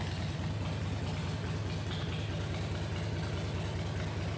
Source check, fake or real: real